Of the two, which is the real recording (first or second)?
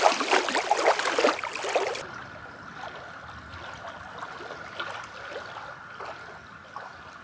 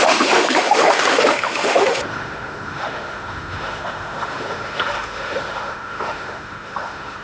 first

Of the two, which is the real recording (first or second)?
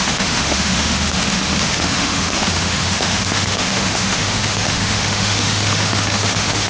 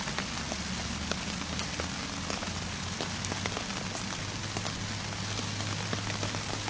second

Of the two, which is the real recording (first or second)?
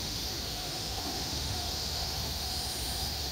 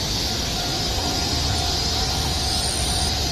second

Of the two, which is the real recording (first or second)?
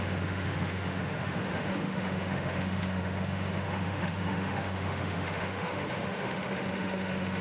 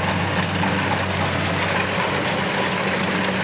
second